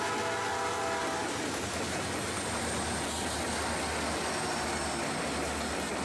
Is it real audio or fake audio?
real